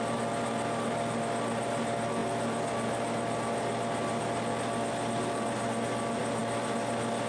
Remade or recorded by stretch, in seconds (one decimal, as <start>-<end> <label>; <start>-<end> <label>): 0.0-7.3 recorded